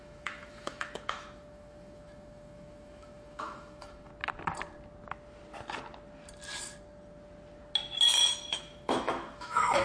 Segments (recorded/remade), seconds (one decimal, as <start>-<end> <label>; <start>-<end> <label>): 0.0-4.1 remade; 4.1-8.5 recorded; 8.5-9.8 remade